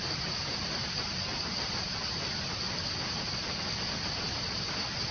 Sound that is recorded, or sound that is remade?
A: recorded